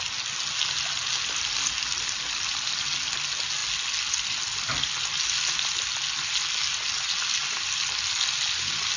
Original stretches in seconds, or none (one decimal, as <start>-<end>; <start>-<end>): 0.0-9.0